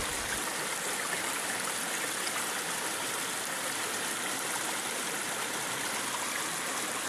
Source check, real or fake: real